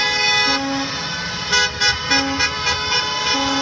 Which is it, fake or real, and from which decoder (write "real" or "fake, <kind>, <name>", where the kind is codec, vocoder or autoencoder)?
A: real